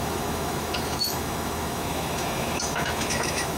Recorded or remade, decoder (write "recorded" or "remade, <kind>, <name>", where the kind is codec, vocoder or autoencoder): remade, autoencoder, DAC-VAE